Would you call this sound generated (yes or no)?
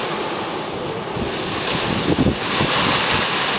no